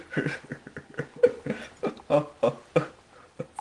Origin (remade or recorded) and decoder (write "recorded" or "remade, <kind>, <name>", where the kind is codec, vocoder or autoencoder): recorded